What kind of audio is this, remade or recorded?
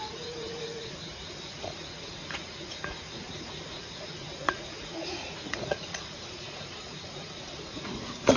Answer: remade